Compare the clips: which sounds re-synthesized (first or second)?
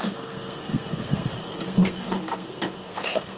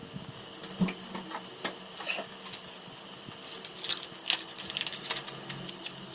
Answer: first